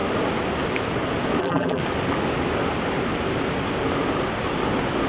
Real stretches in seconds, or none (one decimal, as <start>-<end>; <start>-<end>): 0.0-1.4; 1.8-5.1